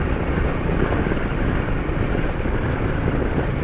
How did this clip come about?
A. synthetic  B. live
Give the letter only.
B